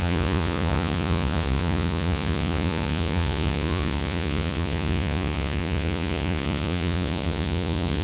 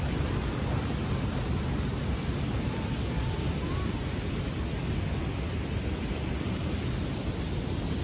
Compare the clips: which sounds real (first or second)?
second